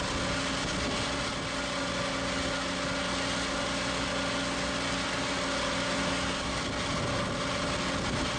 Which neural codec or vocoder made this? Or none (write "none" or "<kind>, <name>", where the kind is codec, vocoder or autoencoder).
none